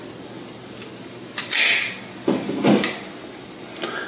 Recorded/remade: recorded